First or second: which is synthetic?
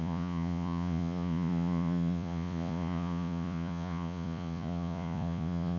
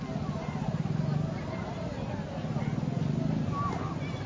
first